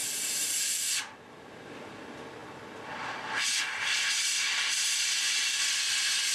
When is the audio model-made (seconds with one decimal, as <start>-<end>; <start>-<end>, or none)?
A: none